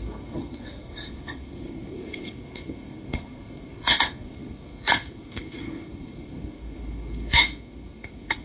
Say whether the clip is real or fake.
fake